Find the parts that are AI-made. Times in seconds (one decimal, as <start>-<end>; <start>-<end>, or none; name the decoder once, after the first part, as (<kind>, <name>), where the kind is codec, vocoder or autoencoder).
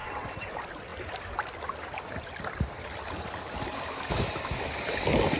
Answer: 0.0-0.5 (vocoder, WaveNeXt)